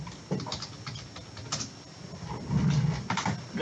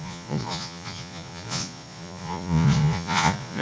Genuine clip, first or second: first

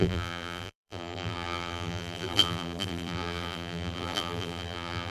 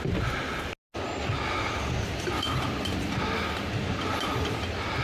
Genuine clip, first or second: second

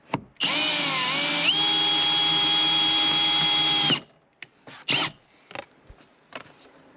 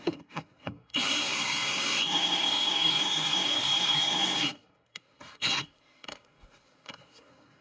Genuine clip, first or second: first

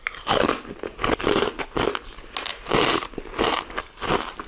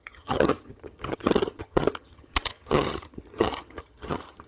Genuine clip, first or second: first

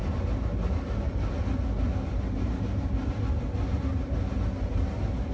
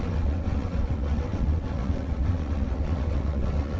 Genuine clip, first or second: first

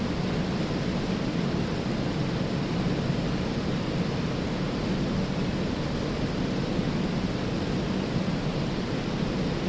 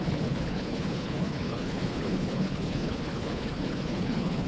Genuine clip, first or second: first